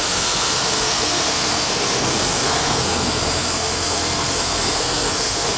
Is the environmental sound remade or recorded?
remade